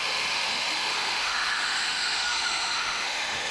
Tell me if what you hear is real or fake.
fake